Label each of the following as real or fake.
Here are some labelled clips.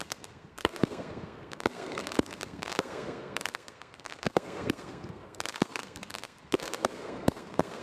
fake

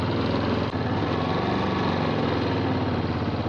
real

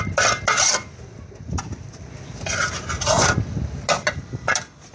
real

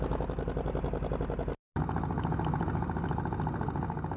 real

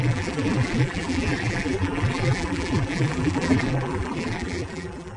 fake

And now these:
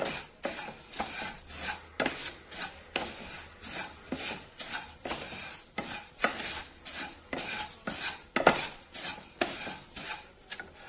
real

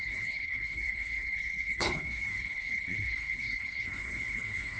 fake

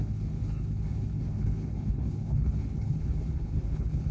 fake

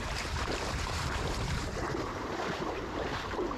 fake